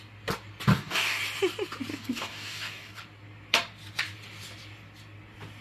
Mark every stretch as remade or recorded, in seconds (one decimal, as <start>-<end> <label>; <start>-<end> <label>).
0.0-0.7 recorded; 0.7-1.2 remade; 1.2-1.9 recorded; 1.9-3.0 remade; 3.0-5.6 recorded